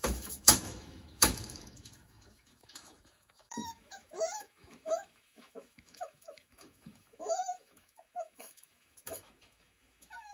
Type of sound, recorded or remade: remade